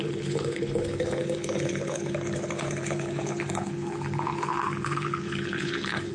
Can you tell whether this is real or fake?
fake